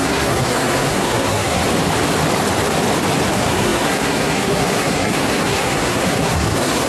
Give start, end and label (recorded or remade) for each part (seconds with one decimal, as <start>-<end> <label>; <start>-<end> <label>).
0.0-1.6 remade; 1.6-3.3 recorded; 3.3-6.9 remade